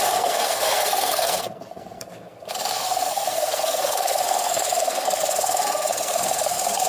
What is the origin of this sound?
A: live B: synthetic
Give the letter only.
B